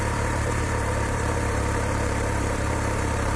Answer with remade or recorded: remade